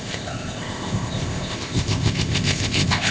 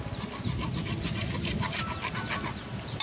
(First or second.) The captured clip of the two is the second